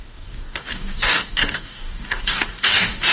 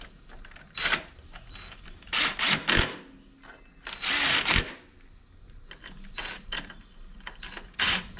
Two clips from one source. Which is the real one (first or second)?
second